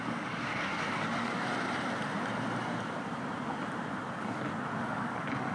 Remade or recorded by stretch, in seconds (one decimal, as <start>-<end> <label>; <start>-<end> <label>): 0.0-1.5 remade; 1.5-4.8 recorded; 4.8-5.5 remade